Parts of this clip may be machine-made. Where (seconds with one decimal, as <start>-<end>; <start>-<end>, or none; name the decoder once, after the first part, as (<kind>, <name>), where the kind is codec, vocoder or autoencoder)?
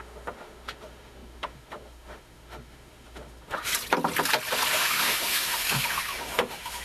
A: 0.0-3.7 (autoencoder, DAC-VAE); 4.7-6.8